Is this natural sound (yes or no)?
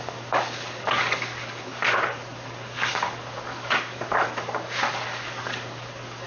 no